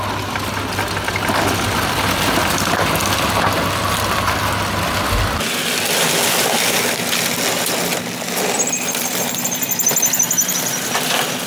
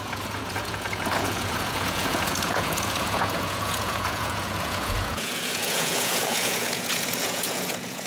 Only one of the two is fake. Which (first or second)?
second